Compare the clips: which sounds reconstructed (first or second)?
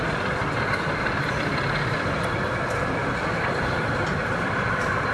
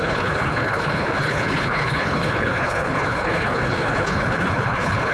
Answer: second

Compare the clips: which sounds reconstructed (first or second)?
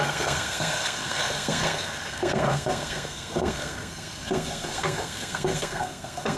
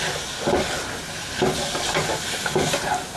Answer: first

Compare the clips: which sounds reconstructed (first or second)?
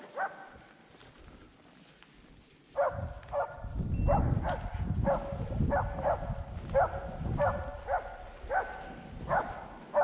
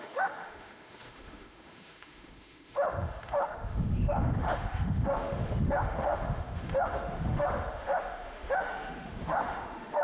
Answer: second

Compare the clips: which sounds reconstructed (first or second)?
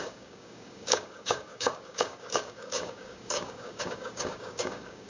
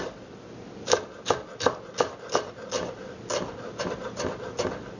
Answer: first